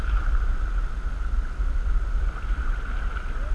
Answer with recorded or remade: recorded